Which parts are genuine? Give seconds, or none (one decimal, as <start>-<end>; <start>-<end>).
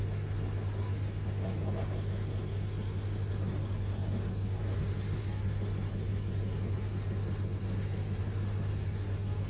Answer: 0.0-9.5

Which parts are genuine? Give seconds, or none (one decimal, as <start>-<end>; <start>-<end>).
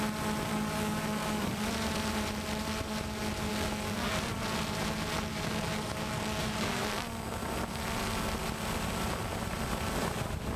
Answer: 0.0-0.5; 1.5-3.5; 4.3-5.3; 6.8-10.6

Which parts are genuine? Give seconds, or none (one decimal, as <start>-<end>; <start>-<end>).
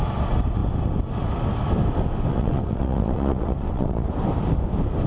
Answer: 0.0-2.3; 4.1-5.1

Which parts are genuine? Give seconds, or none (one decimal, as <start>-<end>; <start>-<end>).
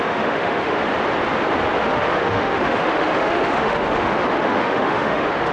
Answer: 0.8-1.8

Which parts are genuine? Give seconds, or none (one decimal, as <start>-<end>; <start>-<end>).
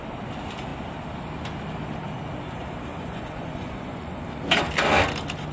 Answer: 0.0-2.9; 4.2-5.5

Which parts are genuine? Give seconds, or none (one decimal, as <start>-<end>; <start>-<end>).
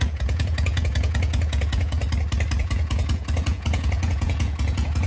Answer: 2.0-2.6